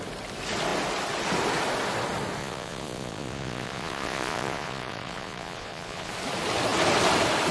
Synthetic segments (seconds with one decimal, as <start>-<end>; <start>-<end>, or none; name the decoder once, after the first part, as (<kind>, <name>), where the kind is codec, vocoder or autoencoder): 2.4-6.1 (vocoder, Vocos)